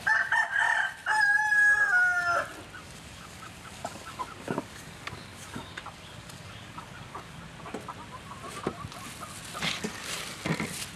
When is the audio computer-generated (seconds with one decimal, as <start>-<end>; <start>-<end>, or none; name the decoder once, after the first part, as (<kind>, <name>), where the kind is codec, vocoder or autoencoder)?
2.8-7.4 (codec, DAC)